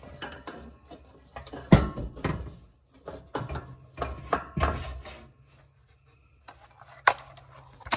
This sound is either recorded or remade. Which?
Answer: recorded